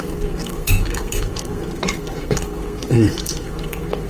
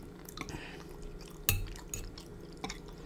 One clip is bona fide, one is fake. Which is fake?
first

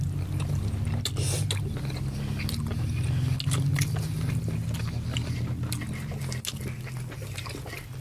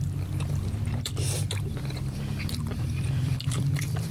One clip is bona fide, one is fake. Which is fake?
second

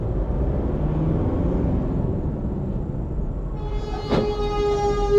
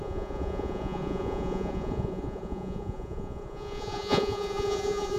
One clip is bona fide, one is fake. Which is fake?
second